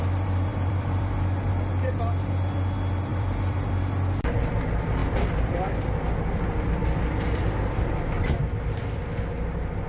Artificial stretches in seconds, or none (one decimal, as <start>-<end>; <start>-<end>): 0.5-1.5; 3.1-4.4; 5.0-5.6; 6.8-7.4